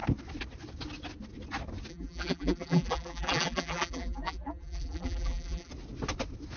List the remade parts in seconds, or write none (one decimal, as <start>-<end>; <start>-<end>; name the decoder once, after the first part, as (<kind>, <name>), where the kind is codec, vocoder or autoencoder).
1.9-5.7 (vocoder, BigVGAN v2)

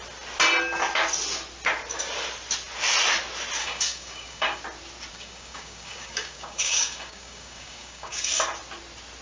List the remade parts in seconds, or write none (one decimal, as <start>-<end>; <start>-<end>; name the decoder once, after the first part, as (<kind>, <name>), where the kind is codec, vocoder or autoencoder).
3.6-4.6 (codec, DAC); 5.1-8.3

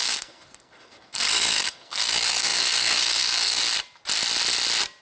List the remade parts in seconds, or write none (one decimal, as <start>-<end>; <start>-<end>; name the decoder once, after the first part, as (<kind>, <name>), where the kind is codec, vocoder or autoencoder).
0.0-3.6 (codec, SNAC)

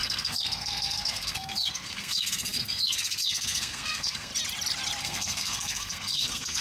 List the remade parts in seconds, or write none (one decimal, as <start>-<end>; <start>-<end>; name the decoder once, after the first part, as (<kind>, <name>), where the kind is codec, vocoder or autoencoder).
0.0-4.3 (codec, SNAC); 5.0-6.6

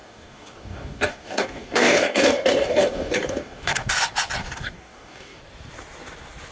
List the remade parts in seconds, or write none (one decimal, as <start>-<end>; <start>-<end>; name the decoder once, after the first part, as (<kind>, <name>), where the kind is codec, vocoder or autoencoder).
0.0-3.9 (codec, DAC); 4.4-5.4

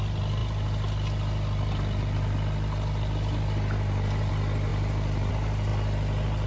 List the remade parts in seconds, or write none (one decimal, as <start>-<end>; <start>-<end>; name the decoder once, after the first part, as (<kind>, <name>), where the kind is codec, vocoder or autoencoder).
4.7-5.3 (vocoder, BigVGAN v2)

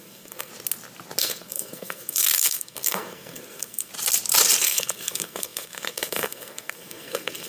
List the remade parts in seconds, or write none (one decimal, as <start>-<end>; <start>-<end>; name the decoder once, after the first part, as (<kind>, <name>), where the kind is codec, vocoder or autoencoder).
0.0-0.5 (codec, SNAC); 1.2-3.9; 4.6-7.5

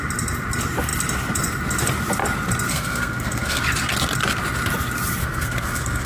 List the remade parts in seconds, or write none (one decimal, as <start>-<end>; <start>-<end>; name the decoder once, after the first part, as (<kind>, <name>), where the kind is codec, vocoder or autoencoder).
2.7-3.6 (codec, SNAC); 5.2-6.1